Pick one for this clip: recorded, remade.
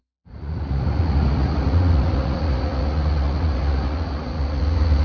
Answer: remade